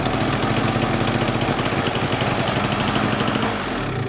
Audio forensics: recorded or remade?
recorded